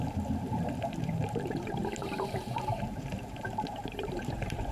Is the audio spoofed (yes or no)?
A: yes